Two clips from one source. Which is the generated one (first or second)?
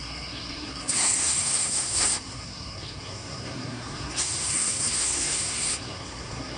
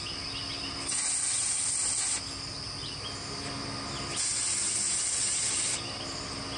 first